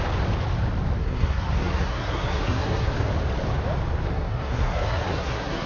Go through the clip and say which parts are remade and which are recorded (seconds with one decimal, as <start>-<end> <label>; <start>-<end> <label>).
0.0-1.0 recorded; 1.0-3.1 remade; 3.1-4.1 recorded; 4.1-5.7 remade